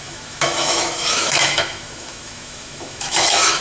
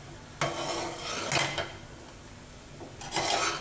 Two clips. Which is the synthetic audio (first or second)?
first